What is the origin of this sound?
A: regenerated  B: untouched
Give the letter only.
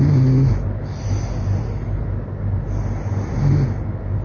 B